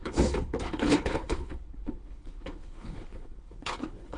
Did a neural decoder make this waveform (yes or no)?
yes